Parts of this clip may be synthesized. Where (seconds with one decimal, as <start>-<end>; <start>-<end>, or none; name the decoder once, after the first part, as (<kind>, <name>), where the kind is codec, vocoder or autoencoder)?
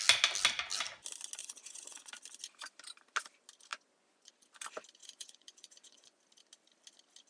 1.4-2.1 (vocoder, Vocos); 3.7-4.3; 5.0-6.2